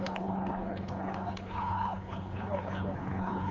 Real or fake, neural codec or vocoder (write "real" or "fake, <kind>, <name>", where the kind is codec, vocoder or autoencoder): fake, codec, HILCodec